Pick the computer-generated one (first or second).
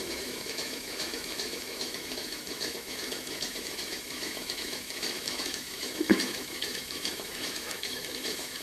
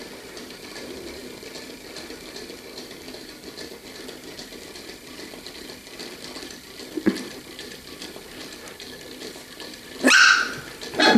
first